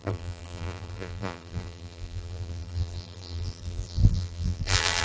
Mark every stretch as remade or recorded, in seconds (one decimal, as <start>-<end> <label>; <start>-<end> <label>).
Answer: 0.0-5.0 remade